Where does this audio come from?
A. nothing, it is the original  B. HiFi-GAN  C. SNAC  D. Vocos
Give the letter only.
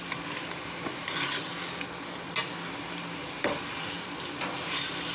A